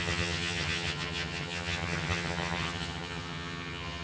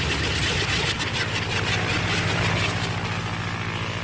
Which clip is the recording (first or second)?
second